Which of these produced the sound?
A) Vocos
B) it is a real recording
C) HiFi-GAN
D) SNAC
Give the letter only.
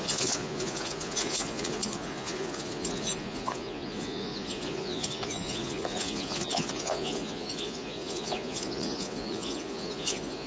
A